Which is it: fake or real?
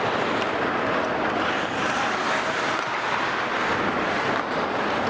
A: real